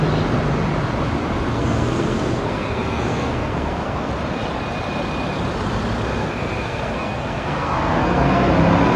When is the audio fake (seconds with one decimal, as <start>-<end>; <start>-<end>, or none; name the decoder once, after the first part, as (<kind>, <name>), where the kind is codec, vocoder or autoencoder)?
1.5-4.1 (codec, SNAC); 6.2-8.5